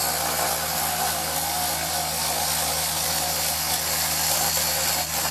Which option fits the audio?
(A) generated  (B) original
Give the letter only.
B